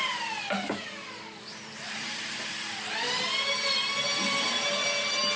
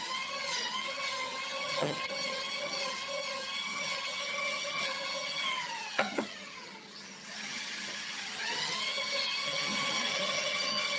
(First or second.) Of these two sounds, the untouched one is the first